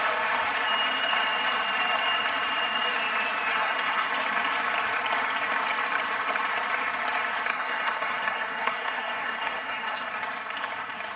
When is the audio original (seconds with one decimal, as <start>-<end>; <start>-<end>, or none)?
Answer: 0.0-3.5; 4.1-7.5; 10.1-11.2